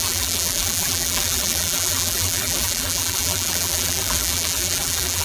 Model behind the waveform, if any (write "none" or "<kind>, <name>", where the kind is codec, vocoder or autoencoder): vocoder, BigVGAN v2